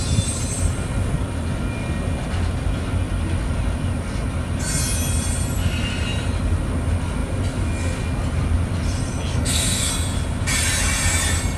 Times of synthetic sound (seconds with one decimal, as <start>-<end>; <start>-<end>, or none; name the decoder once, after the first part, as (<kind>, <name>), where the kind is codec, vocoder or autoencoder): 9.3-9.9 (codec, SNAC)